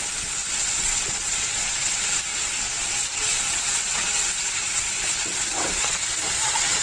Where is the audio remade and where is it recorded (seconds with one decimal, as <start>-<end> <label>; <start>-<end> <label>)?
0.0-6.8 remade